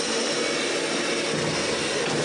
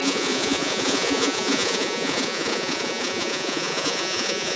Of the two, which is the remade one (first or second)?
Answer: second